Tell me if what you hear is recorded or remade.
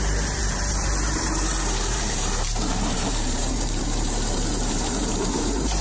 remade